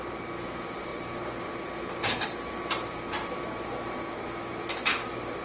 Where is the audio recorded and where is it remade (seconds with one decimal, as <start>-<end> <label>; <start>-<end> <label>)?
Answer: 0.0-5.4 recorded